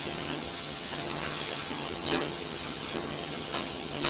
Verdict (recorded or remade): remade